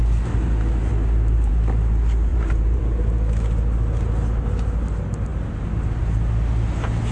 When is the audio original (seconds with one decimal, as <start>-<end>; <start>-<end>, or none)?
0.0-2.3; 2.8-7.1